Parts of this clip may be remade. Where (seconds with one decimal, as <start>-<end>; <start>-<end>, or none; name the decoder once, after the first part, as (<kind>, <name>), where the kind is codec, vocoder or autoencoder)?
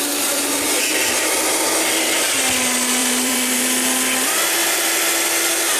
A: 3.0-3.6 (vocoder, BigVGAN v2)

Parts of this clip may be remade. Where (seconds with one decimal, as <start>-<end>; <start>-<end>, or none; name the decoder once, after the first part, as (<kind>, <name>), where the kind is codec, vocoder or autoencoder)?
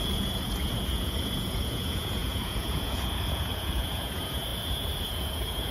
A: 0.0-5.7 (vocoder, Vocos)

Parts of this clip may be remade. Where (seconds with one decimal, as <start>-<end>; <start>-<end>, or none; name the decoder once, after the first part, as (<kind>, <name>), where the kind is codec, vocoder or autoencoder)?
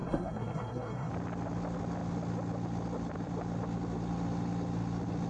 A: 0.0-1.1 (codec, SNAC)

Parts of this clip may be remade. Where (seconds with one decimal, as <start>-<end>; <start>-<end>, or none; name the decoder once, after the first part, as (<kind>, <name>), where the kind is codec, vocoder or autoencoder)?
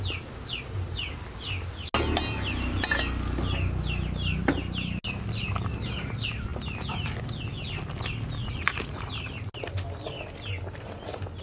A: 8.4-9.1 (vocoder, Vocos)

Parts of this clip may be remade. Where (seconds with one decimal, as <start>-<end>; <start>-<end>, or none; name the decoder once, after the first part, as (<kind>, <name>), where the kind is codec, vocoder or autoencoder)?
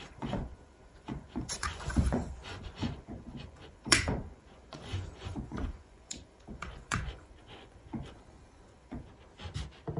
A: 0.0-9.1 (vocoder, Vocos)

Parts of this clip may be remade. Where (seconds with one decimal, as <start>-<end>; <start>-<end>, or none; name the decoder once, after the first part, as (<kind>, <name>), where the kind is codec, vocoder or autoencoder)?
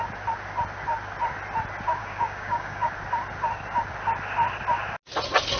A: 2.0-2.9 (codec, DAC)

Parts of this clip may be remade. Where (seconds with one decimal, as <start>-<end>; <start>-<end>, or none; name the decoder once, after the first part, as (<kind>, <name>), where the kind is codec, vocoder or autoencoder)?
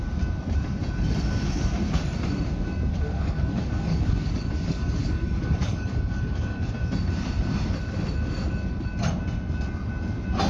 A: 2.9-6.7 (codec, DAC)